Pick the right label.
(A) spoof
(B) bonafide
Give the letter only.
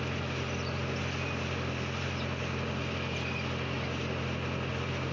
B